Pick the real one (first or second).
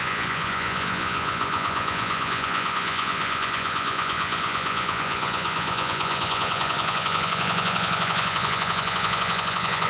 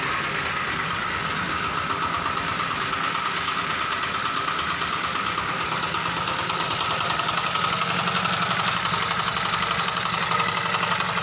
second